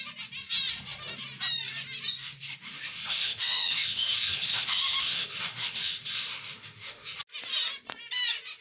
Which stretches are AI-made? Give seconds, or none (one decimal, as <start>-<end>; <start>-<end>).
2.2-7.2